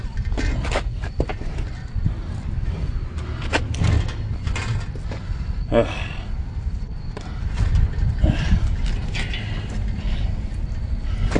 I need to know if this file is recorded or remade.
recorded